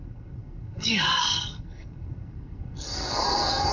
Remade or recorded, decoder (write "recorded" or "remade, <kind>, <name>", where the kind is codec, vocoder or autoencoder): remade, codec, SNAC